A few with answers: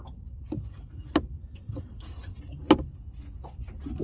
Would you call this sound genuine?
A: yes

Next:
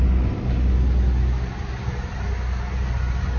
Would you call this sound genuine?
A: yes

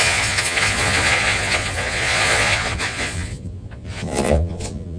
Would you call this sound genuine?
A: no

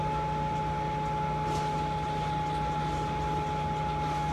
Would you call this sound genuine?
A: yes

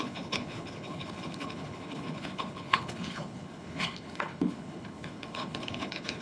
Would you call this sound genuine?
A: no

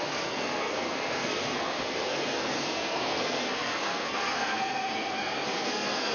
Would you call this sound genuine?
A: no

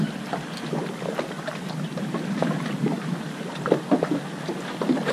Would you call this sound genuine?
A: yes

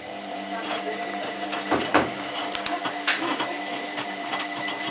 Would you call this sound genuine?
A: no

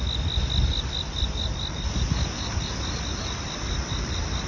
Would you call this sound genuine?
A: yes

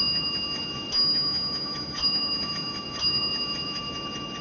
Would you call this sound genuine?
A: no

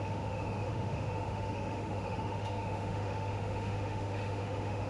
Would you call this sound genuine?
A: no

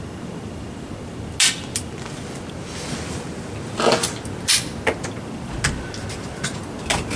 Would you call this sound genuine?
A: yes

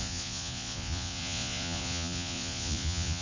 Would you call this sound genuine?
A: no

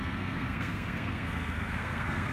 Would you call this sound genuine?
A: no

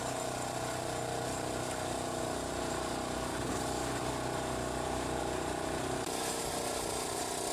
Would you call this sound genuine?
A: yes